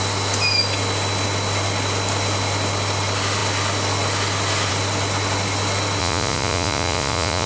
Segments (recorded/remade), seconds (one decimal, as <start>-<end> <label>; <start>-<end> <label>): 0.0-6.0 recorded; 6.0-7.5 remade